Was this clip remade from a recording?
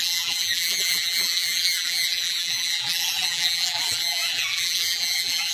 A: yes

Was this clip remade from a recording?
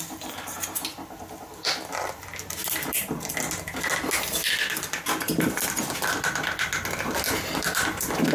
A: no